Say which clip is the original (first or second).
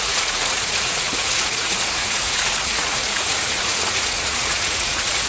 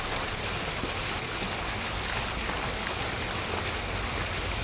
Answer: second